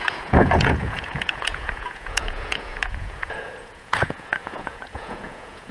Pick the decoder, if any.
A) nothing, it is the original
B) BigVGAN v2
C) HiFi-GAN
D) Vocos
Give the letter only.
D